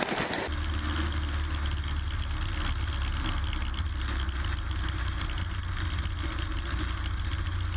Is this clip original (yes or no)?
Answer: yes